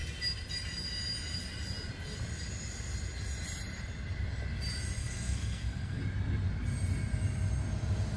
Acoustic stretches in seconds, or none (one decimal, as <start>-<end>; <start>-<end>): 0.0-5.0; 6.0-8.2